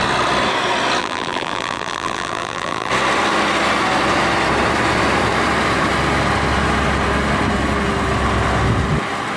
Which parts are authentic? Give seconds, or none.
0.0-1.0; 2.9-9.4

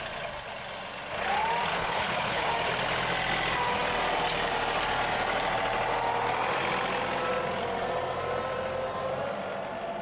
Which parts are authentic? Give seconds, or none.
0.0-1.7; 2.5-10.0

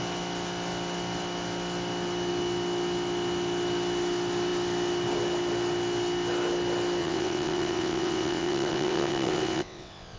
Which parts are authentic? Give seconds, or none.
0.0-7.0

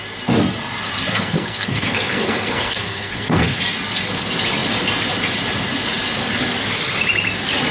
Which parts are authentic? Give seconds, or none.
0.0-1.1; 3.6-7.7

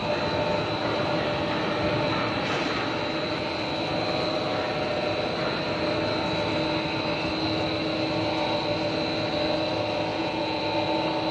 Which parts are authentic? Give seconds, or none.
0.0-10.1; 10.6-11.3

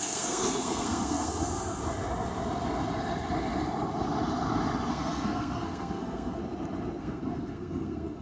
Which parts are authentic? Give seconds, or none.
1.8-4.9; 6.4-7.0

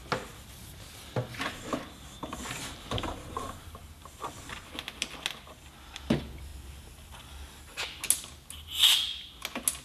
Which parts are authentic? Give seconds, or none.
0.0-2.4; 4.2-9.8

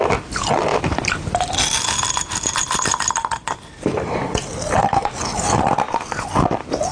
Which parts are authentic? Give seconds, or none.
0.0-6.9